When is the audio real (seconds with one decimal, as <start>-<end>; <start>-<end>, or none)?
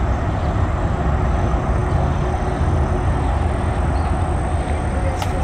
0.0-5.4